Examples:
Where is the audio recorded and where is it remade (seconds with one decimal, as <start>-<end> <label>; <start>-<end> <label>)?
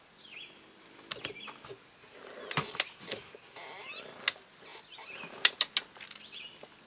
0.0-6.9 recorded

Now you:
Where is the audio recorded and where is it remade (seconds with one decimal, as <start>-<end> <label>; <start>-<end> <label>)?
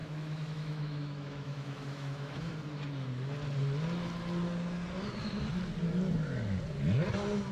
0.0-2.5 remade; 2.5-7.5 recorded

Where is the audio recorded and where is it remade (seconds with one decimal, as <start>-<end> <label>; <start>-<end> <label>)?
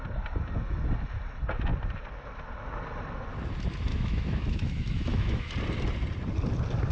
0.0-3.9 recorded; 3.9-5.5 remade; 5.5-6.9 recorded